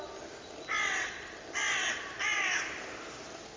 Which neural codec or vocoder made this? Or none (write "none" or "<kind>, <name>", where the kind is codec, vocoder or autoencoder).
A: none